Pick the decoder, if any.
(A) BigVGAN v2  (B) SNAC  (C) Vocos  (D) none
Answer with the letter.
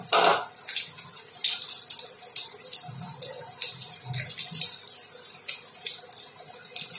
D